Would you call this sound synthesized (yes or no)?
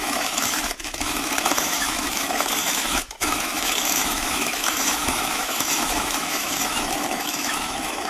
yes